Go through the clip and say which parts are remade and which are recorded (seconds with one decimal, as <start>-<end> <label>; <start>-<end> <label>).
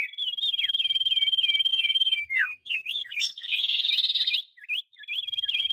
0.0-1.7 recorded; 1.7-3.9 remade; 3.9-5.7 recorded